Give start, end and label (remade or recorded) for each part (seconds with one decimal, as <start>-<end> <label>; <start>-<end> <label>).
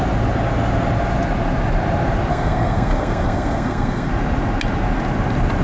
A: 0.0-2.3 recorded; 2.3-4.1 remade; 4.1-5.6 recorded